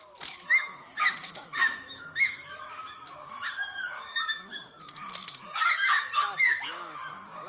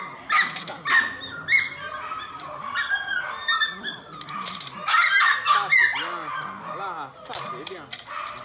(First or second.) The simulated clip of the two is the first